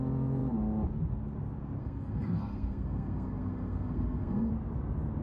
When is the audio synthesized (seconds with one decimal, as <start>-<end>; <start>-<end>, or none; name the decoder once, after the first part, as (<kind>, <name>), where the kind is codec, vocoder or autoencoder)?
1.8-4.5 (codec, SNAC)